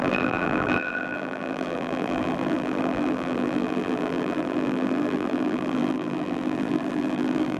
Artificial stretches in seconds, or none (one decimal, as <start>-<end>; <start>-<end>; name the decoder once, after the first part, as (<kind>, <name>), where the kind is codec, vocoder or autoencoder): 0.0-7.6 (vocoder, BigVGAN v2)